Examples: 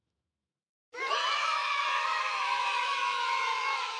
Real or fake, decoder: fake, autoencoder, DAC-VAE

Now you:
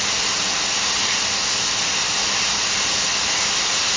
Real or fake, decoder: real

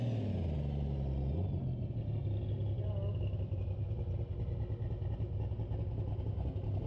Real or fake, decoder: real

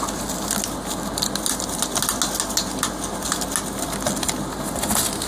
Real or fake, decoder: real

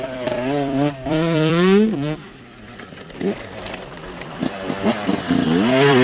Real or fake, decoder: fake, vocoder, BigVGAN v2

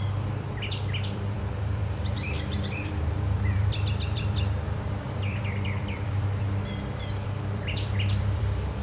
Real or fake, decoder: fake, vocoder, BigVGAN v2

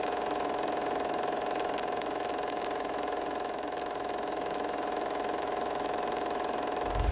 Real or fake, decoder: fake, autoencoder, DAC-VAE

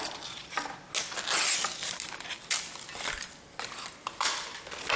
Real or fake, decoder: real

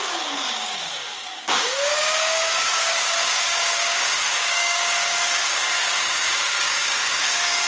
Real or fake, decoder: fake, codec, DAC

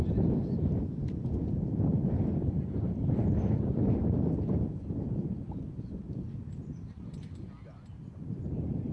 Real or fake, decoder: fake, vocoder, BigVGAN v2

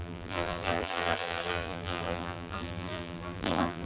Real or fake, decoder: fake, vocoder, BigVGAN v2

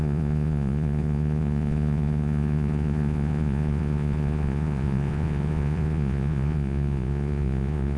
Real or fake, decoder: fake, vocoder, Vocos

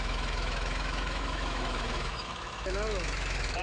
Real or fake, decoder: fake, autoencoder, DAC-VAE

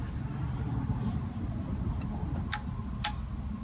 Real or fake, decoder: real